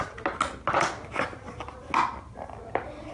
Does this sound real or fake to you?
real